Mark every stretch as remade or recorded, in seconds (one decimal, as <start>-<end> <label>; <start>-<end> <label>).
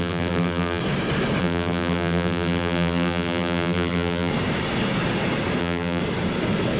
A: 0.0-0.8 remade; 0.8-1.4 recorded; 1.4-4.3 remade; 4.3-5.6 recorded; 5.6-6.0 remade; 6.0-6.8 recorded